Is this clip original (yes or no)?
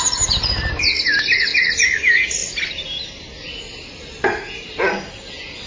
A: yes